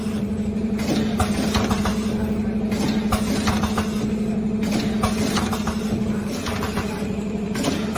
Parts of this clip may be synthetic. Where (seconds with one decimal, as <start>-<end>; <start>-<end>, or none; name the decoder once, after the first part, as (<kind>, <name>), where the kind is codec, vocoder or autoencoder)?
0.0-1.9 (vocoder, BigVGAN v2); 5.3-8.0